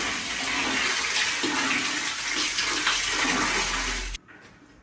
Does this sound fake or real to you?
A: real